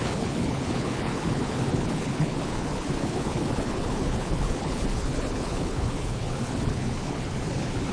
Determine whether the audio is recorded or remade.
remade